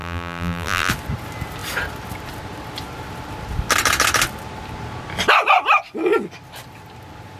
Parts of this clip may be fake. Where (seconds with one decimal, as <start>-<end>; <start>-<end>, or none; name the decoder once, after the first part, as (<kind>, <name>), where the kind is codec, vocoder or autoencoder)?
0.0-0.9 (vocoder, BigVGAN v2)